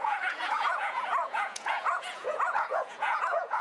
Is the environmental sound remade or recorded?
remade